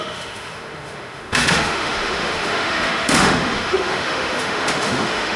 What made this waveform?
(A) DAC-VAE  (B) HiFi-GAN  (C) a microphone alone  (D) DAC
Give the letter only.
A